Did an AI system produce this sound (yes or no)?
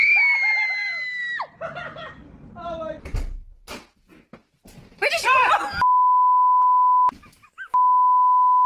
no